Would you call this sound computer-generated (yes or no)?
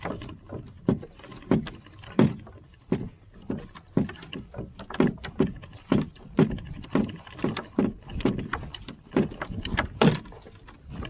no